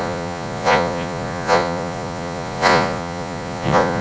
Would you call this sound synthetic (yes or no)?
yes